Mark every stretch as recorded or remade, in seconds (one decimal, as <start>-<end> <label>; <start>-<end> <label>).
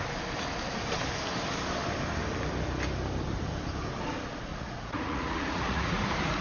0.0-4.5 recorded; 4.5-6.0 remade; 6.0-6.4 recorded